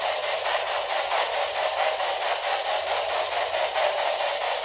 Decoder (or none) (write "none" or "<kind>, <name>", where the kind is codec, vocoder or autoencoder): vocoder, BigVGAN v2